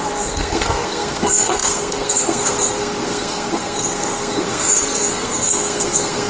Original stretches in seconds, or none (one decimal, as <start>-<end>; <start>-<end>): none